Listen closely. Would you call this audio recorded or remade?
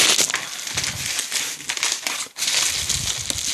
recorded